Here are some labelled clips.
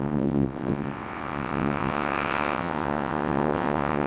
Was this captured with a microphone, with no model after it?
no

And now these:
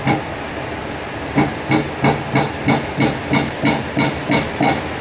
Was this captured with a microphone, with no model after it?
yes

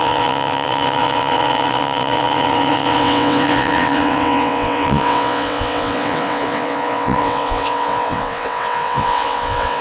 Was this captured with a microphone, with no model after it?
no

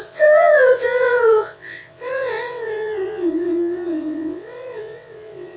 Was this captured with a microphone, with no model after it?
no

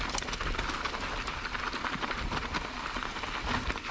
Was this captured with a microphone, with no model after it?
yes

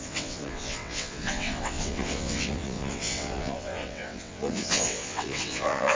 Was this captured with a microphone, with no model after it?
no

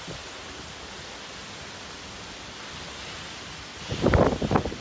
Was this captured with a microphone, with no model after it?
yes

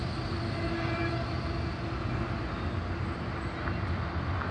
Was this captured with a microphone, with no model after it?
yes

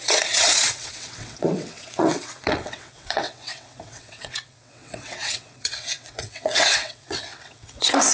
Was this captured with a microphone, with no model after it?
no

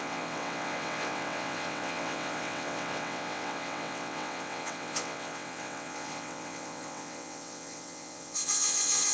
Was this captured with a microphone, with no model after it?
no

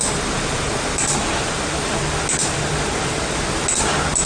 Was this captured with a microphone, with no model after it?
yes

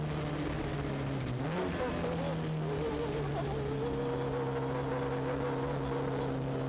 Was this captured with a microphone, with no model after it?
yes